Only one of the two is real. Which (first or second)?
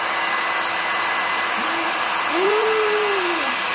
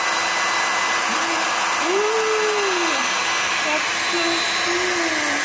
second